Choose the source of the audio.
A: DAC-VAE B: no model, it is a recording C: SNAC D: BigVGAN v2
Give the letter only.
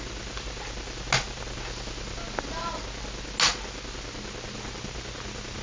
B